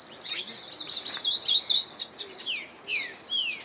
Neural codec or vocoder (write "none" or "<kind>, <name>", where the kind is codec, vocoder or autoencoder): none